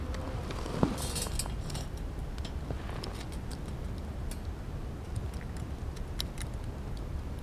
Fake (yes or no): no